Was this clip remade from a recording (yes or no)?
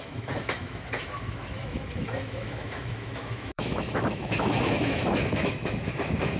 yes